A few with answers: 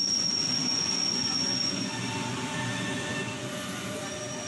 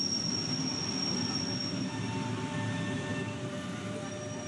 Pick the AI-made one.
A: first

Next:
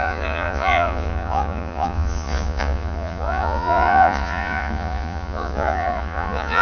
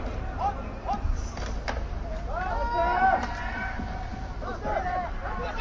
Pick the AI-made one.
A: first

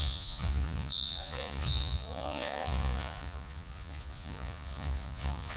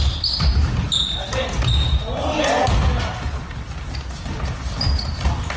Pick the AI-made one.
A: first